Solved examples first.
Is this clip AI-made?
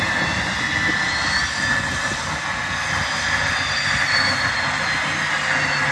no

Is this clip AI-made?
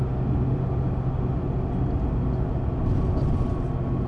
no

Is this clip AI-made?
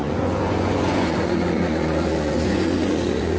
yes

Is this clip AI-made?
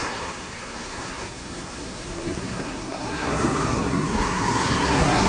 yes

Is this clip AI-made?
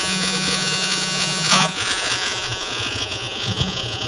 yes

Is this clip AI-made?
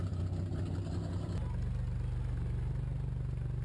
no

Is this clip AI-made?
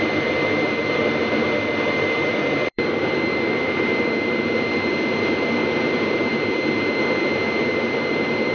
yes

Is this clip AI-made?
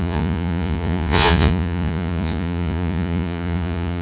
yes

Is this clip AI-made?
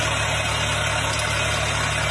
no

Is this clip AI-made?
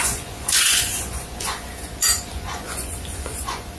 yes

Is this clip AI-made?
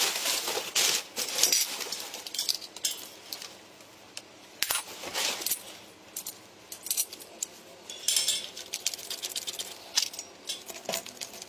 no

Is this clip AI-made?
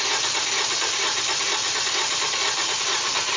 no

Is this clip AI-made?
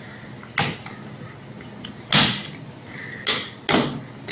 no